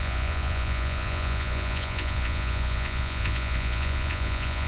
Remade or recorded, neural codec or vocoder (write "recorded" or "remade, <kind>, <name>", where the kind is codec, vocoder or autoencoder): remade, vocoder, Vocos